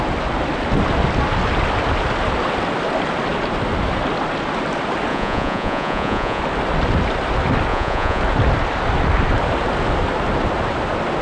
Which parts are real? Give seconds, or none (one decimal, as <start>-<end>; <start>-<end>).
0.0-5.1; 6.4-7.7; 8.2-11.2